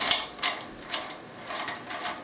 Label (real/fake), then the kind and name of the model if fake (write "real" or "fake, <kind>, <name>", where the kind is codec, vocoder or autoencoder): real